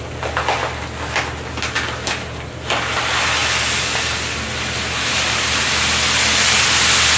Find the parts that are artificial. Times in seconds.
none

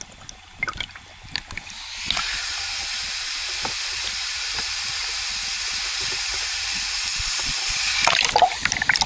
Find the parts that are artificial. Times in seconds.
7.1-7.8 (vocoder, BigVGAN v2)

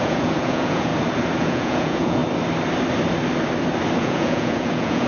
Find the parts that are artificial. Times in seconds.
0.0-0.9 (vocoder, Vocos); 1.4-2.2; 4.0-5.1

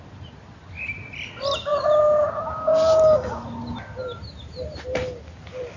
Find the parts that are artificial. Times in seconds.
4.0-5.0 (vocoder, BigVGAN v2)

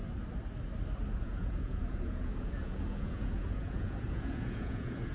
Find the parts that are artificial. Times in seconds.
1.2-5.1 (vocoder, Vocos)

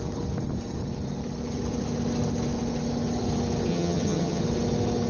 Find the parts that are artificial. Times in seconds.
3.7-4.4 (vocoder, HiFi-GAN)

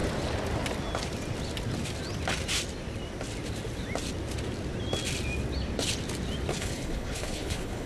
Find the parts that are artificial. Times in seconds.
6.5-7.9 (codec, HILCodec)